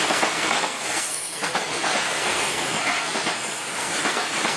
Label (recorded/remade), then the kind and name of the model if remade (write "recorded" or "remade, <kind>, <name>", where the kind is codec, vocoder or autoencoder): remade, codec, SNAC